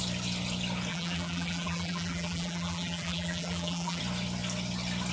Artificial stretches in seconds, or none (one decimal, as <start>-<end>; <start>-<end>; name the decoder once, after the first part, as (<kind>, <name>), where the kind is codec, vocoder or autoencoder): 0.9-4.0 (vocoder, BigVGAN v2)